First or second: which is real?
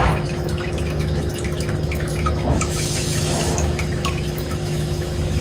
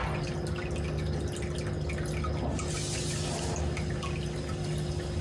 second